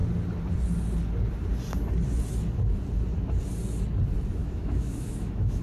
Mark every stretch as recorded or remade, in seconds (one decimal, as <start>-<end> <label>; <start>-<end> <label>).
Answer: 0.0-4.4 recorded; 4.4-5.6 remade